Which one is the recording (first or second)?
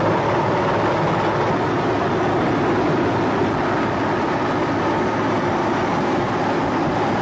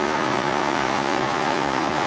first